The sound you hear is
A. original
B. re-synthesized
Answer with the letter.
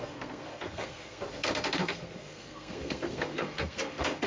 B